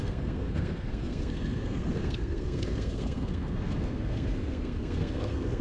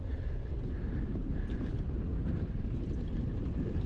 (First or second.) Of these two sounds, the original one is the second